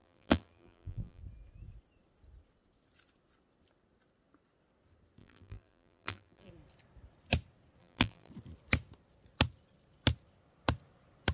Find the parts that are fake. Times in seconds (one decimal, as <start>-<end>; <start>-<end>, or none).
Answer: 0.0-1.2; 5.2-6.5; 7.8-8.3